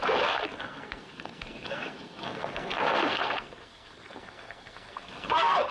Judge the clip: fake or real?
fake